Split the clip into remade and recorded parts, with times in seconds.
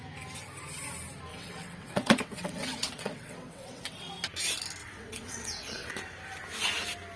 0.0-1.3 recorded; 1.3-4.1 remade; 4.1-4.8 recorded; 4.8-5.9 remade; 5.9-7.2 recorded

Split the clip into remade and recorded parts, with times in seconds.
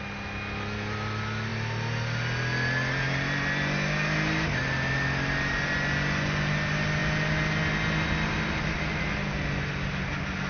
0.0-10.5 recorded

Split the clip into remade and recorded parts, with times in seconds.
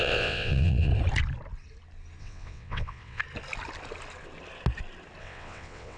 0.0-0.9 remade; 0.9-2.2 recorded; 2.2-3.2 remade; 3.2-5.2 recorded; 5.2-6.0 remade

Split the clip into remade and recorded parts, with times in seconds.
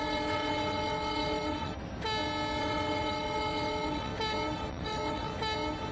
0.0-1.7 remade; 1.7-2.6 recorded; 2.6-4.1 remade; 4.1-4.7 recorded; 4.7-5.3 remade; 5.3-5.9 recorded